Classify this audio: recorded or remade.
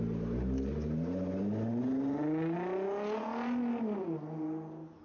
recorded